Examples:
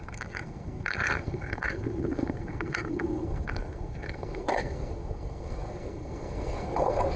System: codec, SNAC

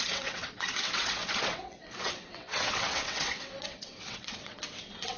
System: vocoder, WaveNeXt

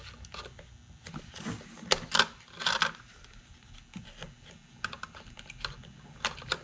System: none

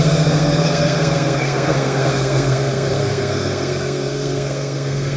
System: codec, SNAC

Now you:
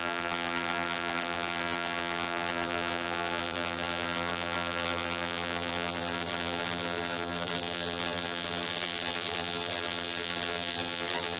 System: vocoder, BigVGAN v2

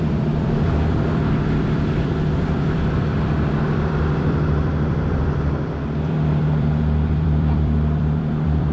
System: vocoder, BigVGAN v2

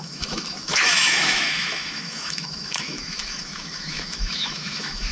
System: autoencoder, DAC-VAE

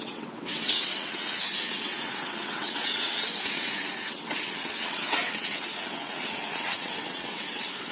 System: vocoder, WaveNeXt